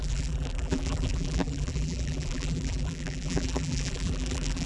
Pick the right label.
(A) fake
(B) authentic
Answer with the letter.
A